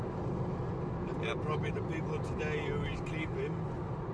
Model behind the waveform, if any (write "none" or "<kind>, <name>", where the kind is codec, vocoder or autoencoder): none